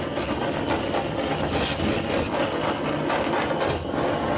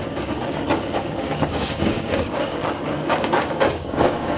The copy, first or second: second